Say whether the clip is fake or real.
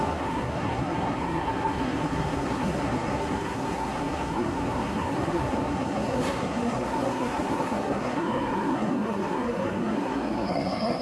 fake